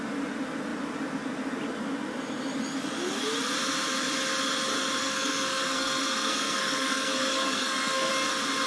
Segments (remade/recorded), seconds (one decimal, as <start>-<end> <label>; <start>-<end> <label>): 0.0-5.0 recorded; 5.0-8.1 remade; 8.1-8.7 recorded